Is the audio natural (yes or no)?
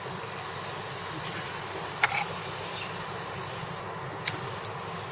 yes